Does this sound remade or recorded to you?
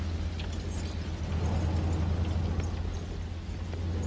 recorded